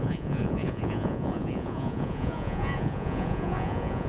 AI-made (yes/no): yes